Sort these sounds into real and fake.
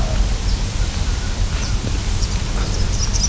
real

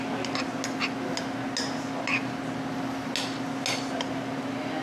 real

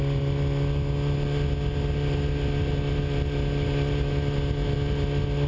real